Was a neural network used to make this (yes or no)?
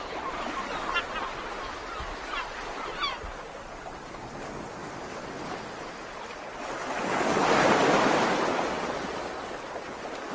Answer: no